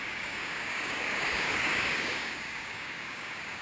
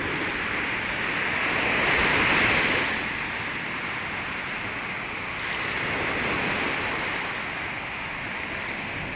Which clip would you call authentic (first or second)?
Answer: second